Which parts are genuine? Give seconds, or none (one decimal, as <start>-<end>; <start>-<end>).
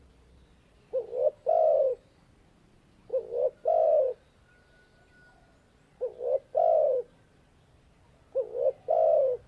0.0-9.5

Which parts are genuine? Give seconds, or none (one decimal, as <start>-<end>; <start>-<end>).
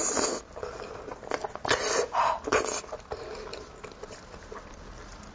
0.0-5.3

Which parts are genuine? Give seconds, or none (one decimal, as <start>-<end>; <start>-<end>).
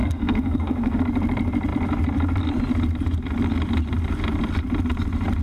1.0-5.4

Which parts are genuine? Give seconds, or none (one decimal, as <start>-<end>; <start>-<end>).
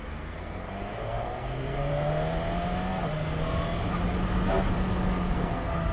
1.9-5.3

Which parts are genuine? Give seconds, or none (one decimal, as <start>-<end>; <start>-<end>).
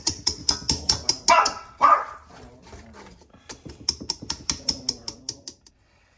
0.4-1.3; 2.0-5.7